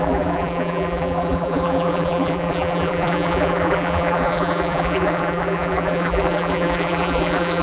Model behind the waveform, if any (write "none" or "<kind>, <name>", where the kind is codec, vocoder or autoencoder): vocoder, BigVGAN v2